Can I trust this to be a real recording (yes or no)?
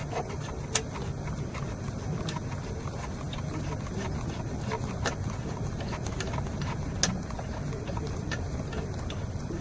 yes